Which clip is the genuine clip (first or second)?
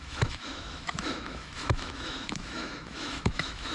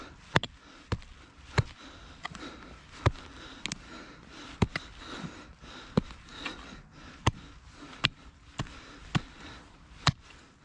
second